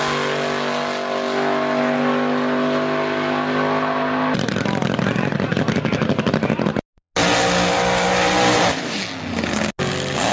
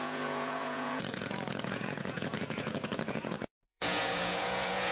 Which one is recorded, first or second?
first